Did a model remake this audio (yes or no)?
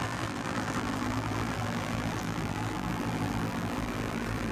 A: yes